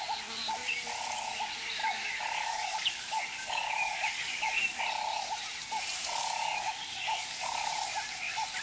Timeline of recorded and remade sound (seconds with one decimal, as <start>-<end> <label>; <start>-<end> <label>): 0.0-1.8 recorded; 1.8-4.8 remade; 4.8-6.1 recorded; 6.1-7.7 remade; 7.7-8.6 recorded